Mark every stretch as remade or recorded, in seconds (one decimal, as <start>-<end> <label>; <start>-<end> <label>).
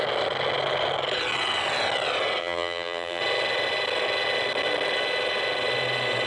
0.0-2.4 recorded; 2.4-3.2 remade; 3.2-6.3 recorded